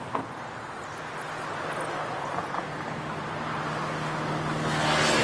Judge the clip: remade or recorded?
recorded